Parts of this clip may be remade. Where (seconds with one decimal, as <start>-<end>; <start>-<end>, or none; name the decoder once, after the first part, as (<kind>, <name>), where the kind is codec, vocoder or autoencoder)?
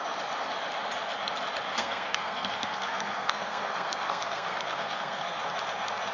1.7-5.4 (codec, SNAC)